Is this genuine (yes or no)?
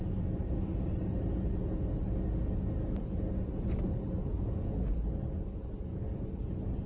yes